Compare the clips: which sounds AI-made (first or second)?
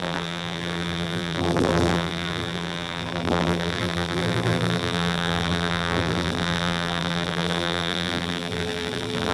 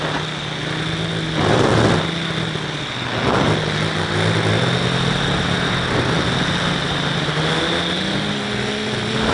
first